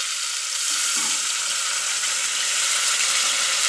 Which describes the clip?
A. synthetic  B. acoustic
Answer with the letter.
B